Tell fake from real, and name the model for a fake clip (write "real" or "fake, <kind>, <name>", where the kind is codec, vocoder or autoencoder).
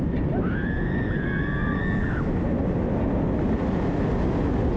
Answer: real